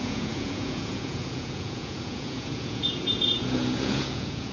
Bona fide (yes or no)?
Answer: no